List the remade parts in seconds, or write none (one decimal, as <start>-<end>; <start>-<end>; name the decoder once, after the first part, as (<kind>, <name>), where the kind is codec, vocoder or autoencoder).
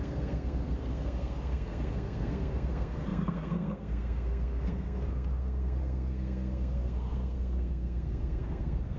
0.0-9.0 (codec, SNAC)